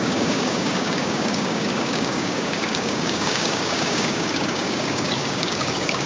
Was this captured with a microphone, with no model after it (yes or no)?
no